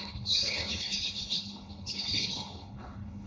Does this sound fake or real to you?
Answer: fake